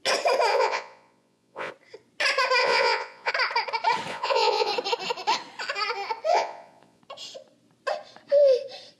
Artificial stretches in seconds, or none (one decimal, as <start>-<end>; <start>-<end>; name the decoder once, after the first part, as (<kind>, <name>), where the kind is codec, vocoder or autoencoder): 0.5-1.7 (vocoder, Vocos); 2.6-3.3; 4.1-4.7; 6.3-7.0